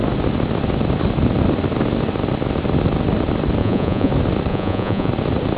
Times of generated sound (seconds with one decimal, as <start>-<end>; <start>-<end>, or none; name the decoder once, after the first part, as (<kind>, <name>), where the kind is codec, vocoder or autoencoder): 3.6-4.1 (vocoder, Vocos); 4.5-5.1